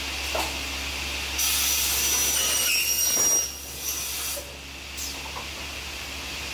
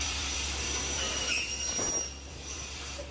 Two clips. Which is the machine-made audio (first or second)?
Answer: second